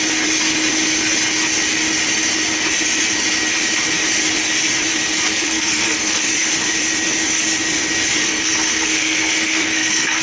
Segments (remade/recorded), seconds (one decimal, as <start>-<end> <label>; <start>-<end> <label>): 0.0-5.3 recorded; 5.3-6.3 remade; 6.3-8.2 recorded; 8.2-10.2 remade